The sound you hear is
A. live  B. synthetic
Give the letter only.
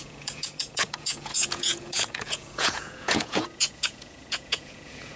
B